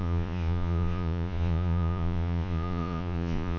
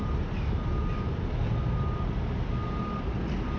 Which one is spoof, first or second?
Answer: first